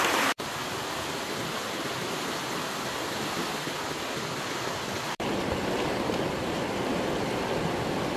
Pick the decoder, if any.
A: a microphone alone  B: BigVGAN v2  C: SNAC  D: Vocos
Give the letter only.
B